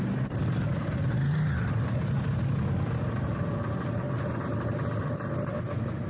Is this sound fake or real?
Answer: real